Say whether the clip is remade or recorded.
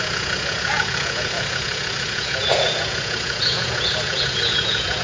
remade